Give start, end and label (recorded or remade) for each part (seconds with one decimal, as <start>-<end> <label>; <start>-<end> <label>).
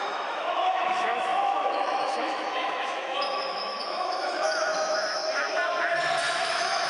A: 0.0-5.2 remade; 5.2-6.3 recorded; 6.3-6.9 remade